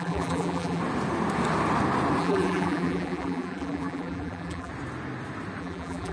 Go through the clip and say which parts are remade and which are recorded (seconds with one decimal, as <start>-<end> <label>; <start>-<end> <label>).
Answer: 0.0-0.8 remade; 0.8-2.2 recorded; 2.2-4.7 remade; 4.7-5.6 recorded; 5.6-6.1 remade